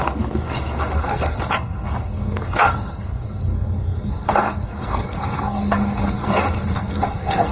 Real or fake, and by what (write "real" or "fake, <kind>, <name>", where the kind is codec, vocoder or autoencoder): fake, codec, SNAC